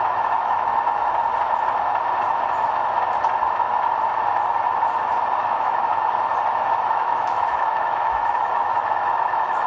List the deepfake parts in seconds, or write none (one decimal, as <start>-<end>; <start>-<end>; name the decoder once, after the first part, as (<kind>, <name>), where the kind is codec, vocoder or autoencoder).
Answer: 0.0-0.7 (autoencoder, DAC-VAE); 5.4-5.9; 6.9-9.7